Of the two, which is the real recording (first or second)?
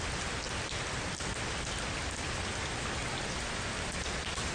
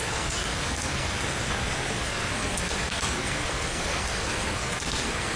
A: first